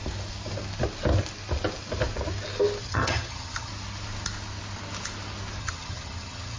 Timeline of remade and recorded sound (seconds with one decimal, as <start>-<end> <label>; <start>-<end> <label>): 0.0-2.8 recorded; 2.8-3.7 remade; 3.7-5.6 recorded; 5.6-6.6 remade